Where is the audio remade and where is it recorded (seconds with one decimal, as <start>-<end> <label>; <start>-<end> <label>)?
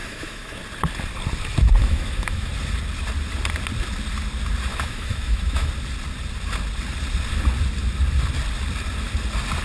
0.0-0.6 remade; 0.6-1.8 recorded; 1.8-2.5 remade; 2.5-4.7 recorded; 4.7-5.7 remade; 5.7-9.6 recorded